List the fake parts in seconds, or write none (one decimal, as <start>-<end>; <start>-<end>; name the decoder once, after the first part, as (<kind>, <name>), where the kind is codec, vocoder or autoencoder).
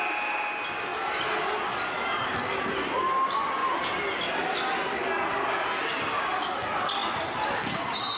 3.6-4.2 (vocoder, BigVGAN v2); 7.0-8.2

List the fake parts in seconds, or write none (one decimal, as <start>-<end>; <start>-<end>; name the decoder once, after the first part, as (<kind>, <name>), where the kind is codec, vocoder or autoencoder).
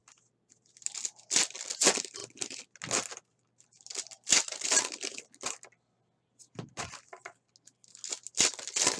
none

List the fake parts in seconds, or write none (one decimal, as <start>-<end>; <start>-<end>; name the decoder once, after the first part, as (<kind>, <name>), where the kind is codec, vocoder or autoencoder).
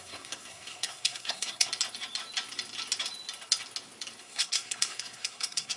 0.0-1.7 (codec, SNAC); 4.2-5.8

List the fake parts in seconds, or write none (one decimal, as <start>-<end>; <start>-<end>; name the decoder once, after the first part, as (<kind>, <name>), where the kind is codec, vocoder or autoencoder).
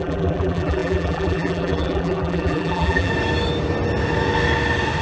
0.0-3.1 (vocoder, BigVGAN v2)